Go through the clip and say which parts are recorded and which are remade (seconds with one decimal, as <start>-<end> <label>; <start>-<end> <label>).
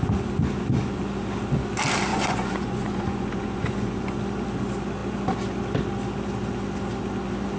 0.0-2.1 recorded; 2.1-4.2 remade; 4.2-7.6 recorded